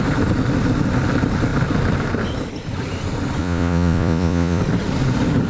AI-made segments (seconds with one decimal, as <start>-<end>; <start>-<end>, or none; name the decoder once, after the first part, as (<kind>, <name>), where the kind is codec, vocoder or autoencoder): 3.4-4.6 (vocoder, Vocos)